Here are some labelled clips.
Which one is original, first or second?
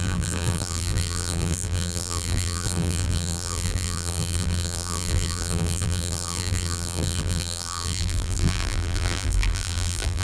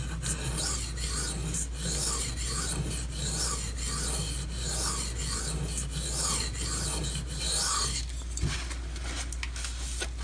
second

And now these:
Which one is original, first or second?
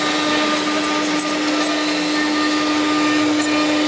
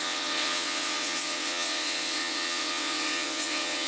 first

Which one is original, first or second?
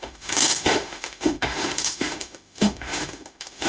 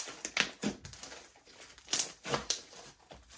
second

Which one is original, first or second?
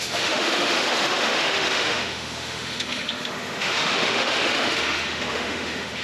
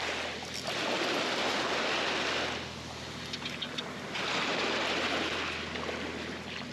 second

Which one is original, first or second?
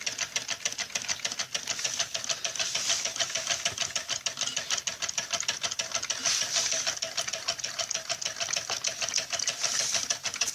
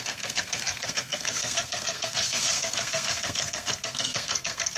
first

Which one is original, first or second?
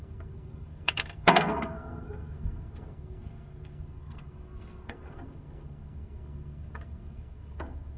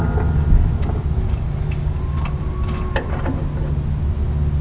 second